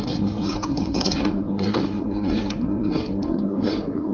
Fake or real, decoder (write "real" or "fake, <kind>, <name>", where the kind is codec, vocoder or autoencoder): fake, codec, SNAC